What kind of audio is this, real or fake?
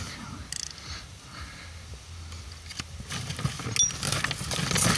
real